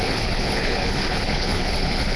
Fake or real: fake